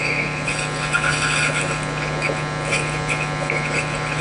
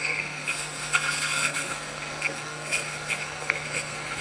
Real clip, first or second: first